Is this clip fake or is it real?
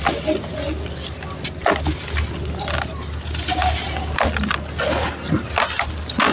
real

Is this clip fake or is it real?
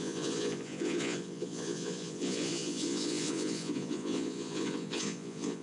fake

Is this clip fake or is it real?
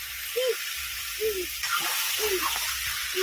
real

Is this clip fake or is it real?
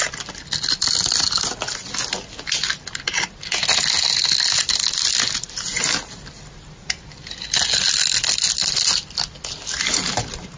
real